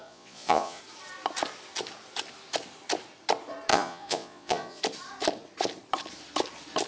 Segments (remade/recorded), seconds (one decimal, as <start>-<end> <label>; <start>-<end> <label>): 0.0-0.8 remade; 0.8-3.7 recorded; 3.7-4.8 remade; 4.8-6.9 recorded